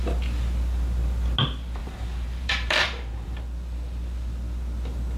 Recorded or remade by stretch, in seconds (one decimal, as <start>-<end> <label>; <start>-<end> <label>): 0.0-1.8 recorded; 1.8-3.4 remade; 3.4-5.2 recorded